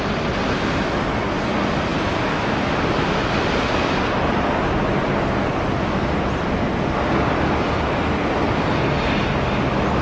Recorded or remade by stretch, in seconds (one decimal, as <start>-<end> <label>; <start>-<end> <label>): 0.0-10.0 recorded